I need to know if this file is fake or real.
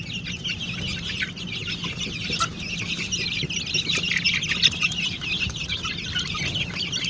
real